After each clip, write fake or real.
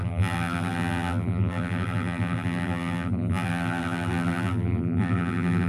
fake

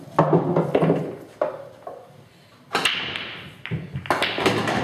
real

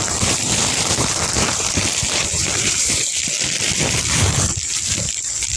fake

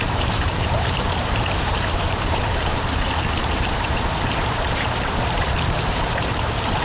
fake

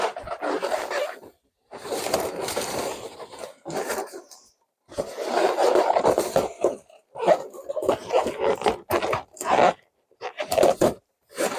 fake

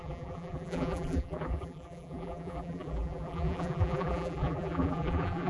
fake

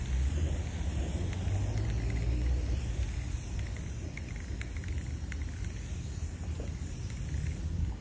real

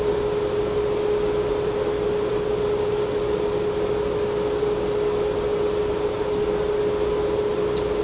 real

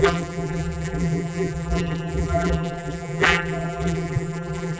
fake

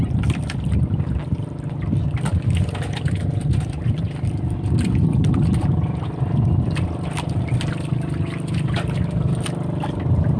real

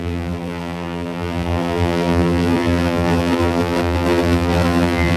fake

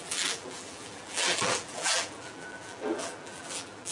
fake